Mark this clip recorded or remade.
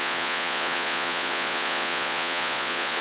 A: remade